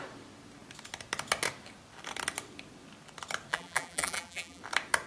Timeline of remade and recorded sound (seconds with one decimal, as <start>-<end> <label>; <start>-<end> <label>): 0.0-3.5 recorded; 3.5-4.6 remade; 4.6-5.1 recorded